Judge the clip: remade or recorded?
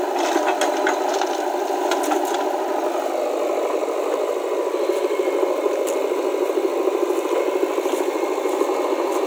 recorded